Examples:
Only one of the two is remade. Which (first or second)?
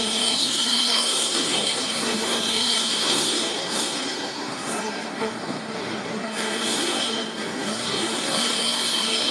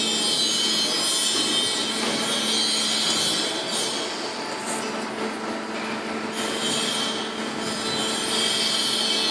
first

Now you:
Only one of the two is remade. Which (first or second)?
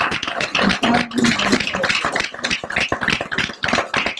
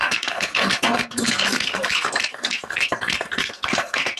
second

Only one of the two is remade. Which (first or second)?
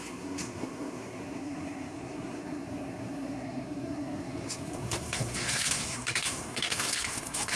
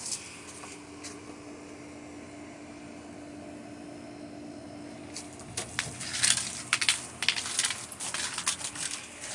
first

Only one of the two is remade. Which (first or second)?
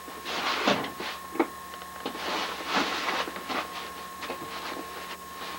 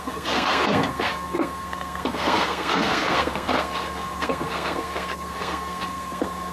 second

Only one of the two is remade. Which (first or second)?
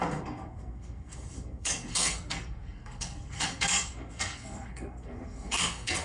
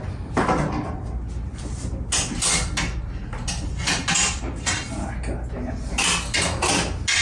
first